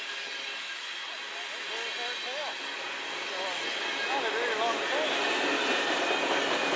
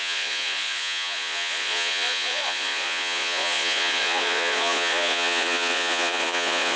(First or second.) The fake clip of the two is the second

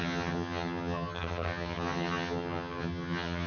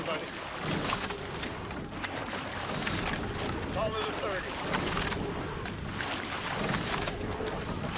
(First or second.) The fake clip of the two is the first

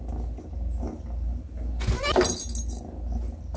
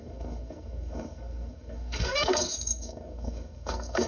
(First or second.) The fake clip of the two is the second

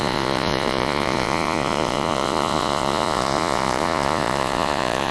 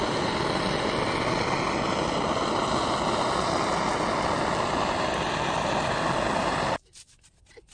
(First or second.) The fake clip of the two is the first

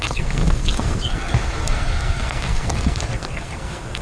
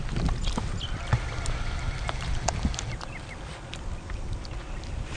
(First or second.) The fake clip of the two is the first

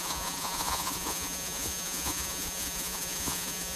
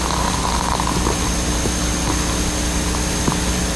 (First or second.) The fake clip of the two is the first